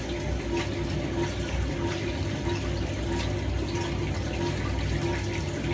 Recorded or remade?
recorded